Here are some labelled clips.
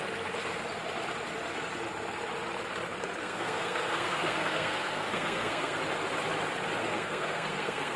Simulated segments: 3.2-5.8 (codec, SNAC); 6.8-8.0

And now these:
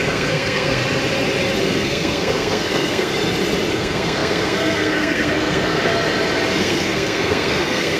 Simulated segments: 0.0-0.8 (codec, SNAC); 1.6-3.1; 3.7-5.9; 6.6-8.0

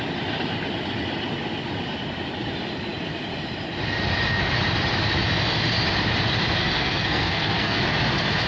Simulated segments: 6.6-7.8 (codec, SNAC)

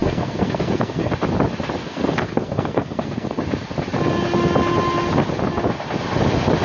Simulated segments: 0.0-1.1 (codec, SNAC); 1.8-3.4

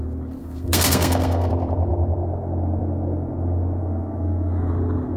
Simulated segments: 0.4-1.5 (codec, SNAC); 3.8-4.7

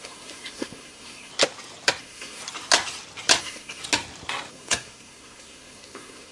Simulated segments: 0.0-1.3 (codec, SNAC); 2.0-2.4; 3.4-3.8; 4.5-6.3

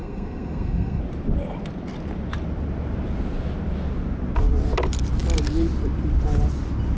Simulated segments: 0.0-1.0 (codec, SNAC)